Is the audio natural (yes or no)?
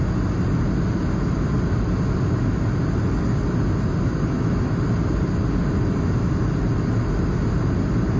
yes